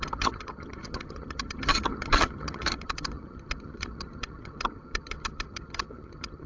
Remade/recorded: remade